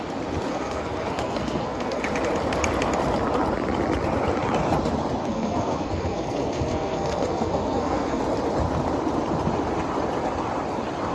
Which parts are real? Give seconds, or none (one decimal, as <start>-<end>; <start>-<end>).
0.0-0.5; 2.0-5.2; 8.2-11.1